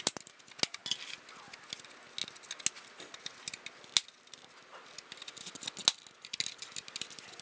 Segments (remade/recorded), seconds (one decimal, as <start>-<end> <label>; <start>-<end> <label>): 0.0-7.4 recorded